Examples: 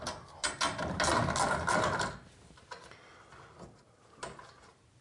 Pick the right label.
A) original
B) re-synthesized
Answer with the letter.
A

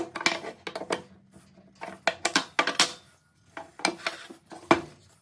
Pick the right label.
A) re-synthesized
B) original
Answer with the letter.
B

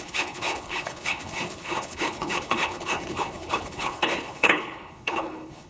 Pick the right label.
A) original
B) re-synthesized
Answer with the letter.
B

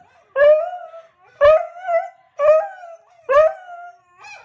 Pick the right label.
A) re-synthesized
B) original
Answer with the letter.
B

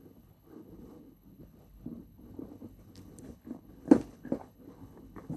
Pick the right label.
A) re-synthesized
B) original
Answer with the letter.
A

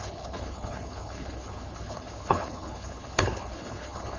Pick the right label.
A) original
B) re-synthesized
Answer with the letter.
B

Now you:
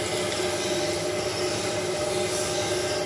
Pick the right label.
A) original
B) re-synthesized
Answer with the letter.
A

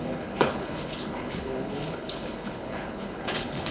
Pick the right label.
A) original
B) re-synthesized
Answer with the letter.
B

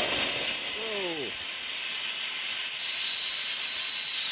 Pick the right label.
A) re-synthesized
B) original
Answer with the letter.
B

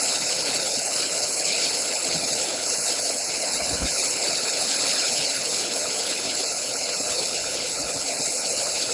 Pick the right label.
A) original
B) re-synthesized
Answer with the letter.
B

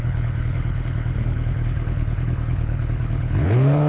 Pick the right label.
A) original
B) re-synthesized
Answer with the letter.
B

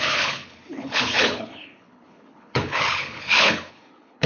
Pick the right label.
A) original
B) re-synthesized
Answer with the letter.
B